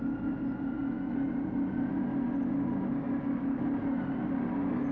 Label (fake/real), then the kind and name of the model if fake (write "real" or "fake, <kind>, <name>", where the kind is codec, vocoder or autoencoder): real